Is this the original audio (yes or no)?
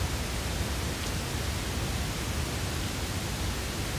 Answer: yes